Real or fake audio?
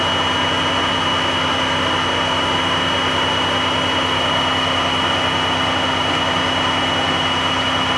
real